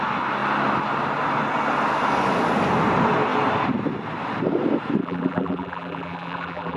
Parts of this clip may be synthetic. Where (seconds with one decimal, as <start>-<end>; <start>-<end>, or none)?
5.0-6.8